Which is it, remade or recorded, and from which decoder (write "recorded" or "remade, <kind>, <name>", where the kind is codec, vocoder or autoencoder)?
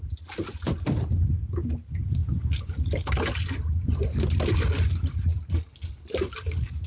recorded